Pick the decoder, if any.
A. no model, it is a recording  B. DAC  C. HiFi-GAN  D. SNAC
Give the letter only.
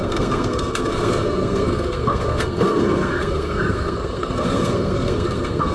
D